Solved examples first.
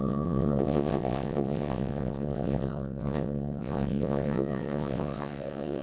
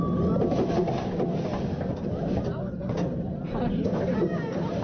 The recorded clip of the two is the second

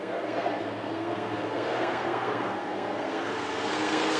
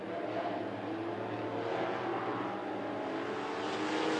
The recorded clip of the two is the second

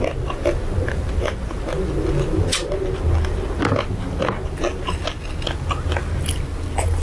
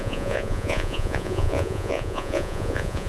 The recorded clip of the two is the first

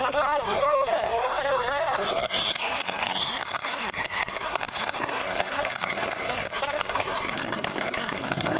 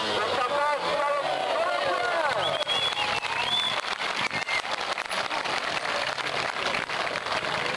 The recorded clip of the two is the second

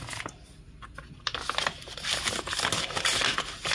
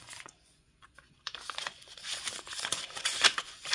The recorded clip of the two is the first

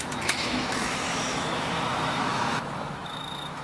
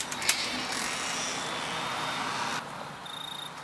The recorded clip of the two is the second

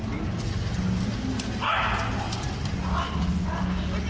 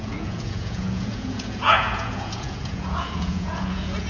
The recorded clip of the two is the first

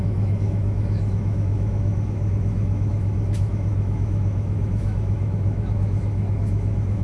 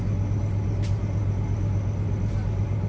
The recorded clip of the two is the second